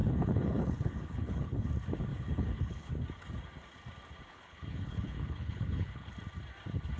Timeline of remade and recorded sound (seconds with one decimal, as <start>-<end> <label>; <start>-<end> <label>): 0.0-1.7 remade; 1.7-2.1 recorded; 2.1-2.9 remade; 2.9-4.3 recorded; 4.3-6.1 remade; 6.1-7.0 recorded

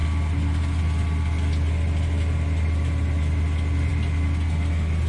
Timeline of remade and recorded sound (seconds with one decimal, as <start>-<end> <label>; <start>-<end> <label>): 0.0-5.1 recorded

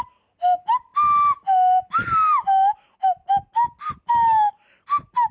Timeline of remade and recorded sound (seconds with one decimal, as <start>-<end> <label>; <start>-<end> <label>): 0.0-5.3 recorded

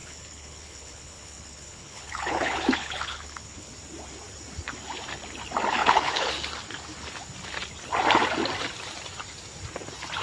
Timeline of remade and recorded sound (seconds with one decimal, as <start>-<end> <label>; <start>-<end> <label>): 0.0-3.7 remade; 3.7-5.8 recorded; 5.8-6.3 remade; 6.3-10.2 recorded

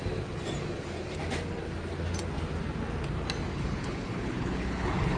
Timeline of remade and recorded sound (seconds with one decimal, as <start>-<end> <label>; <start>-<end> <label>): 0.0-3.5 recorded; 3.5-5.2 remade